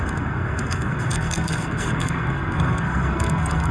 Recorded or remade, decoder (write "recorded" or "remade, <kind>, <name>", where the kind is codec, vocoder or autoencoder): remade, codec, SNAC